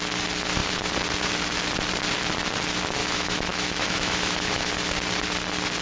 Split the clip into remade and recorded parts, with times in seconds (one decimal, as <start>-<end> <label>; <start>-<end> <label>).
0.0-3.0 recorded; 3.0-4.7 remade; 4.7-5.8 recorded